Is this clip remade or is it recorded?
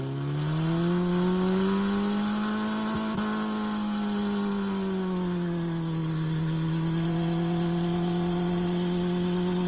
recorded